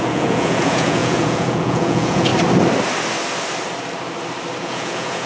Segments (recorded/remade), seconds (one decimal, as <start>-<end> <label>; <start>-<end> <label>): 0.0-2.3 remade; 2.3-4.6 recorded; 4.6-5.3 remade